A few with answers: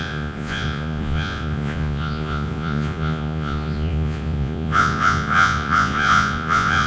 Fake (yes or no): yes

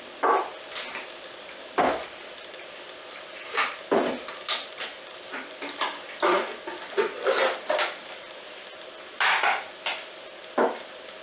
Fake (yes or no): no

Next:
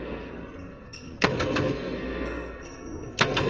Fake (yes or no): yes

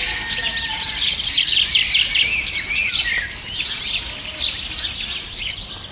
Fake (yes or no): no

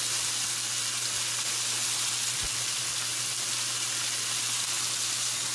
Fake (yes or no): no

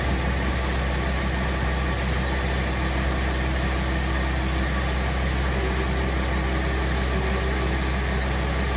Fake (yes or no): no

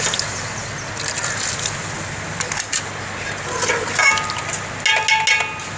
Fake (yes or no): no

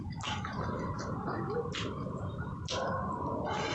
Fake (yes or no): no